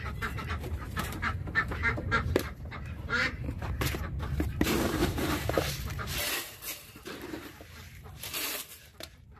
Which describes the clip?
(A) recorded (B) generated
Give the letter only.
B